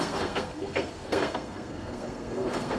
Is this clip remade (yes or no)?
yes